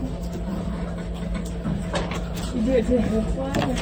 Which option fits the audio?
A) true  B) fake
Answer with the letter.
A